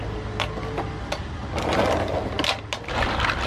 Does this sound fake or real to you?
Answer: real